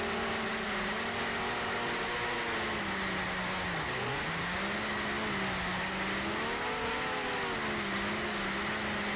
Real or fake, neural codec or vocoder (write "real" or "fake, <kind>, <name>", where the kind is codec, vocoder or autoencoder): real